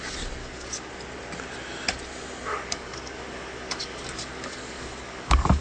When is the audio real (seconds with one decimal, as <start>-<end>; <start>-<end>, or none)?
0.0-0.4; 0.9-2.5